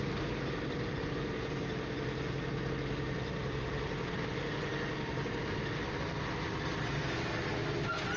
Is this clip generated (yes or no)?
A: no